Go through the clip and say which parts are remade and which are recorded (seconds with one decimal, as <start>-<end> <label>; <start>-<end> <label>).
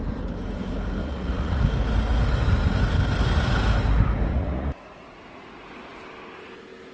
0.0-1.0 recorded; 1.0-1.6 remade; 1.6-4.3 recorded; 4.3-5.7 remade; 5.7-6.9 recorded